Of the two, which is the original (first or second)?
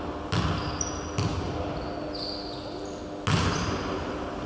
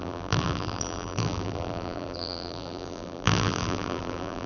first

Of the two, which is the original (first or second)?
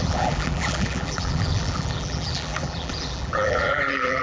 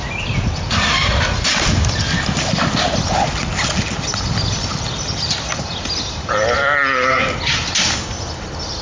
second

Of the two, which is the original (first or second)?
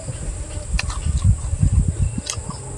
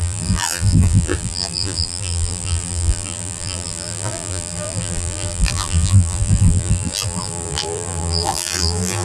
first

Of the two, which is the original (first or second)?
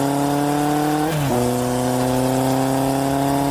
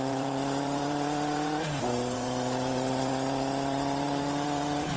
first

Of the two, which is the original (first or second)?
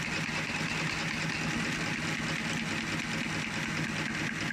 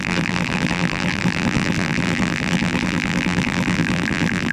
first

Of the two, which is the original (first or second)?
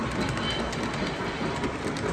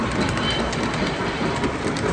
first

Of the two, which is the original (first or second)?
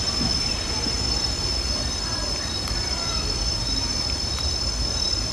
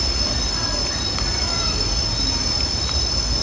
second